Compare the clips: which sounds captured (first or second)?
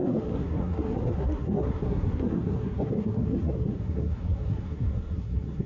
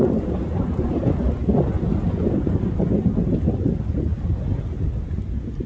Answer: second